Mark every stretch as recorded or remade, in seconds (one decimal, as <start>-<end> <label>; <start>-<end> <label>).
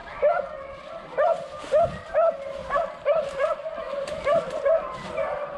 0.0-2.6 recorded; 2.6-4.8 remade; 4.8-5.6 recorded